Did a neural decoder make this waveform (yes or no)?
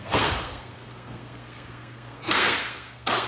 yes